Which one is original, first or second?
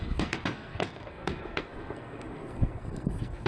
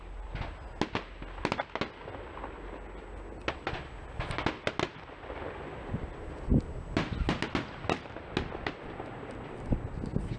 second